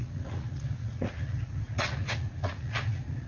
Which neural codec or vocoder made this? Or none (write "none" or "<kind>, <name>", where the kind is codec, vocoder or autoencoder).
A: vocoder, Vocos